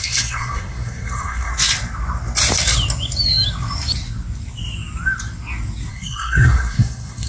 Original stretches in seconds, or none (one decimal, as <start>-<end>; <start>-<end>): 1.5-5.9